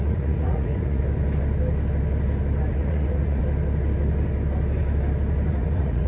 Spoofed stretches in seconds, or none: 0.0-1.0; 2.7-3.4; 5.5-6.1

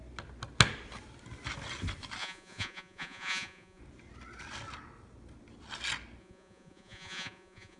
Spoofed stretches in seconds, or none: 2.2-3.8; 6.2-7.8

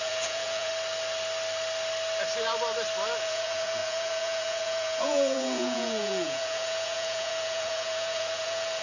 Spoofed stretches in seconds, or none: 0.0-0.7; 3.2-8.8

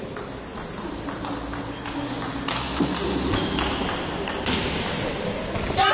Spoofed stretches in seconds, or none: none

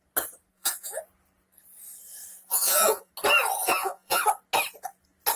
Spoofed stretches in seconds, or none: 0.5-1.0; 2.3-3.1; 3.6-4.2

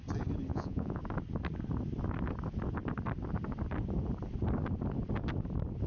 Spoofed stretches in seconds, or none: 0.5-1.0

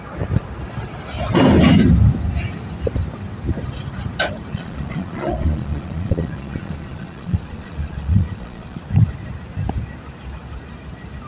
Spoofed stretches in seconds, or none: 4.5-8.8

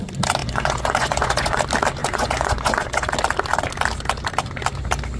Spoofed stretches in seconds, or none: 0.4-1.6; 2.0-3.1